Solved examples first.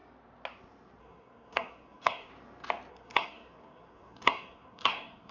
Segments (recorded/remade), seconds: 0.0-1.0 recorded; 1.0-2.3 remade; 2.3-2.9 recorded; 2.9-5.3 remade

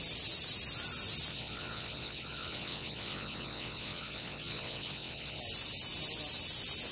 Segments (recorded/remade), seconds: 0.0-1.3 recorded; 1.3-5.4 remade; 5.4-6.9 recorded